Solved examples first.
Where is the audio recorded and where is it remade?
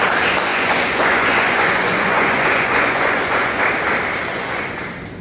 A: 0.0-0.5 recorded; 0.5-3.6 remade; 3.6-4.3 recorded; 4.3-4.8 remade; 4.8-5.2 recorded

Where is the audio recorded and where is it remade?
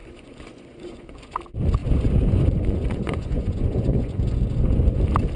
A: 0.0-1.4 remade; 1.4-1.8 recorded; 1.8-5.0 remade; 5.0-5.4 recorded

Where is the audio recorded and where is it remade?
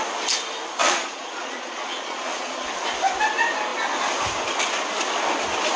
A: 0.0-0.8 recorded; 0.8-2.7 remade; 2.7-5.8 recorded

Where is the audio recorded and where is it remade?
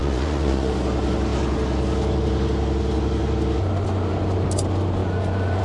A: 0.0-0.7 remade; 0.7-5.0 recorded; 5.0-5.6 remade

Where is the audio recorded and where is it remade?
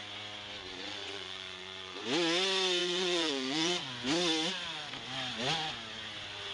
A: 0.0-0.6 recorded; 0.6-2.0 remade; 2.0-2.8 recorded; 2.8-3.9 remade; 3.9-6.5 recorded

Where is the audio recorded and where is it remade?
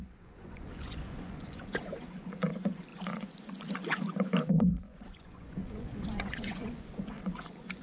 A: 0.0-7.8 remade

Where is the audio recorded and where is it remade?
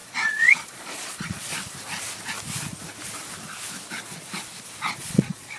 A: 0.0-1.5 remade; 1.5-4.9 recorded; 4.9-5.6 remade